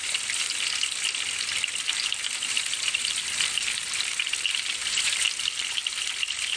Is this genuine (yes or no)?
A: no